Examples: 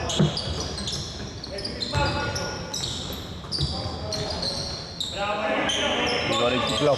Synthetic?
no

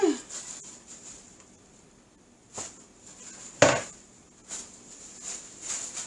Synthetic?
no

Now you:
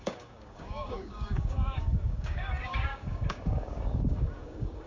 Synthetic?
yes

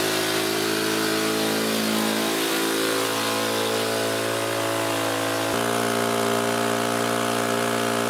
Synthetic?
no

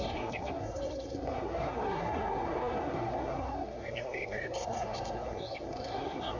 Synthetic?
yes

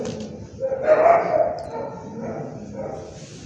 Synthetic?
no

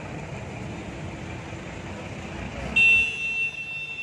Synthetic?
no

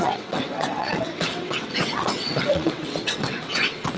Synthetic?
yes